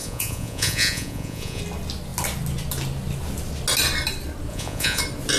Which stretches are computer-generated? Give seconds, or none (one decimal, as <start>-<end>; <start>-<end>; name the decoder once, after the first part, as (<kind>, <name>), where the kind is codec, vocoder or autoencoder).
0.0-1.6 (vocoder, Vocos); 4.5-5.0

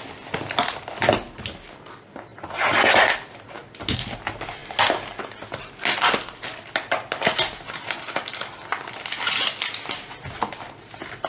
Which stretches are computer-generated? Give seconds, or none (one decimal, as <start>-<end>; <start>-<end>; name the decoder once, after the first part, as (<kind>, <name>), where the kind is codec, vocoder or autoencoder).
none

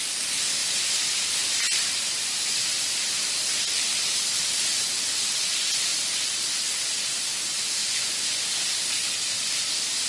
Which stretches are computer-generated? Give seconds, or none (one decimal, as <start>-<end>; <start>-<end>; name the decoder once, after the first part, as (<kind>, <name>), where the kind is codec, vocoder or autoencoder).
7.8-8.5 (vocoder, Vocos)

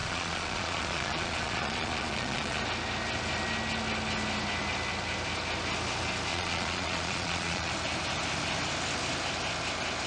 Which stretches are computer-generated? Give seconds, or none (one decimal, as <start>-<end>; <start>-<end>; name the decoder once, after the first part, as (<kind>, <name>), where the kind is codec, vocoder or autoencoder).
0.0-2.6 (vocoder, Vocos); 6.3-7.7

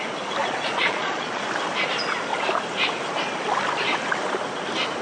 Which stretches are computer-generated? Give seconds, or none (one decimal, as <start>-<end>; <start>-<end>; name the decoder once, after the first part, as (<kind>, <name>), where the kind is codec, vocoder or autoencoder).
0.4-1.4 (vocoder, Vocos)

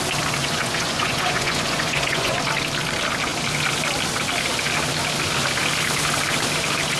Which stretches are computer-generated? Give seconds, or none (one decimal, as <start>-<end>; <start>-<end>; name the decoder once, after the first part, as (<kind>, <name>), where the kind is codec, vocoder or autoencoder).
0.4-2.4 (vocoder, Vocos)